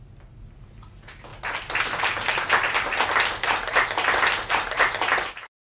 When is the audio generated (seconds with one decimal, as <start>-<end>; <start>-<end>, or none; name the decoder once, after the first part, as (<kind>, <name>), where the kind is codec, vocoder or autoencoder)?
none